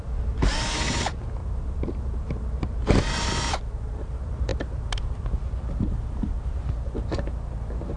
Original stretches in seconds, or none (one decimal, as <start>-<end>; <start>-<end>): 0.0-8.0